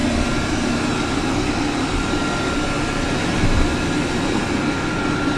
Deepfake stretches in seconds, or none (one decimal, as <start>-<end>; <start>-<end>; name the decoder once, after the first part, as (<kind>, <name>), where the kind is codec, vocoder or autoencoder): none

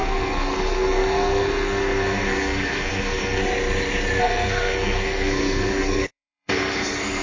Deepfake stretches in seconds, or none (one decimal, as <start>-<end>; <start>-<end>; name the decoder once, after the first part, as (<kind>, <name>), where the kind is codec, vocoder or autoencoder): 0.0-3.4 (codec, SNAC); 4.2-7.2

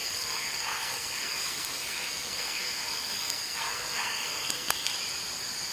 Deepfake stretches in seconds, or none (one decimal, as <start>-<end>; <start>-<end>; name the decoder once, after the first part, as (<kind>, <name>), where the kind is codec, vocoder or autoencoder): 0.0-4.9 (codec, SNAC)

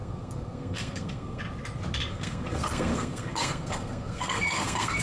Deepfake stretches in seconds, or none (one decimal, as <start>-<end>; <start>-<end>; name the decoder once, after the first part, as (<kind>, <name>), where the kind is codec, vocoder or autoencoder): 0.0-1.4 (codec, SNAC); 2.1-5.0

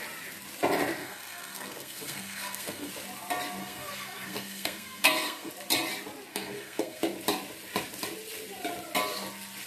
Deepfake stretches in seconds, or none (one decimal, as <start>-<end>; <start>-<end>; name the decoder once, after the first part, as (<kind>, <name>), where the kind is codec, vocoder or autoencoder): 1.0-2.9 (codec, SNAC); 3.6-5.5; 6.3-7.0

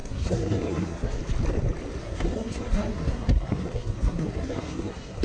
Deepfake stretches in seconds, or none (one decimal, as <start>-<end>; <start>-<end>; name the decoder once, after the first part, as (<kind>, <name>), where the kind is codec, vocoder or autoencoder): 0.0-1.2 (codec, SNAC); 2.0-5.2